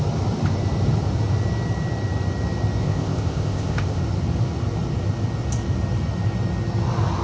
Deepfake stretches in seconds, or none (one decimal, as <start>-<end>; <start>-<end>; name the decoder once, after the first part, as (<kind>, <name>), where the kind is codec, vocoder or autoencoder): 2.8-4.0 (codec, ZipCodec)